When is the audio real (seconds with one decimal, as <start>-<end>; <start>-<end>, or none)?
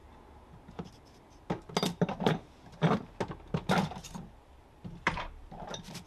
0.0-3.7